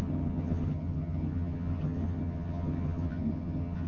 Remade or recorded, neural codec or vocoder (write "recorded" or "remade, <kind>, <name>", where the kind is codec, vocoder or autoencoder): remade, vocoder, HiFi-GAN